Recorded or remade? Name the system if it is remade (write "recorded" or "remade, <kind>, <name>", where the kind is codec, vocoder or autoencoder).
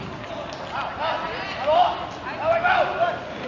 recorded